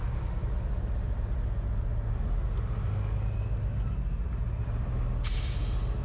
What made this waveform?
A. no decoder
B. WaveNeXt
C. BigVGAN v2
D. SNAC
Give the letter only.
A